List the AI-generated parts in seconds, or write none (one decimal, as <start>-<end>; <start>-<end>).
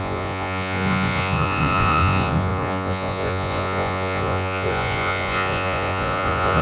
0.0-6.6